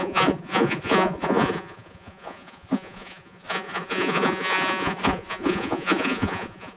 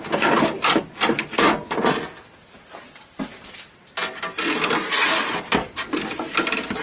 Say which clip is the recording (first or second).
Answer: second